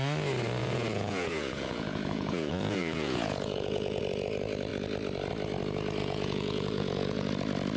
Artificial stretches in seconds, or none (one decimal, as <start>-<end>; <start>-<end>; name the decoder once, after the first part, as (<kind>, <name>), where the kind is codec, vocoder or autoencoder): 0.6-4.0 (vocoder, Vocos); 6.0-7.3